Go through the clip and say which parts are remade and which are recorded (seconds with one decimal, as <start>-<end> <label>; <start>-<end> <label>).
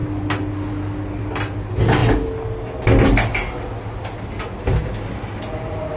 0.0-6.0 recorded